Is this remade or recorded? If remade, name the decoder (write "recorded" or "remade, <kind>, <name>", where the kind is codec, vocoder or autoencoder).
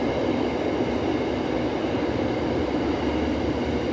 recorded